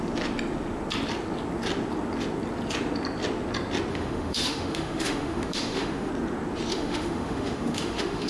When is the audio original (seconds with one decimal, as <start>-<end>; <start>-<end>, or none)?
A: 0.0-3.9; 6.1-6.7

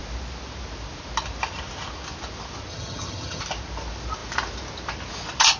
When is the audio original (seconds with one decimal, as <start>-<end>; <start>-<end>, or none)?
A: 0.0-2.7; 3.4-5.6